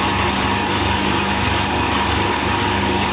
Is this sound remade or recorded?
remade